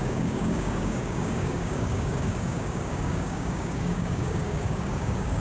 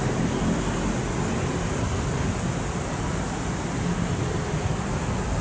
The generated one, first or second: first